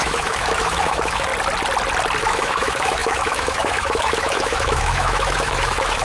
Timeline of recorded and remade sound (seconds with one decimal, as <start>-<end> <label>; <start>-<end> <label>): 0.0-1.3 remade; 1.3-2.2 recorded; 2.2-6.0 remade